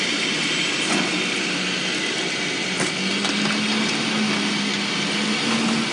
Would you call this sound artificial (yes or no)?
no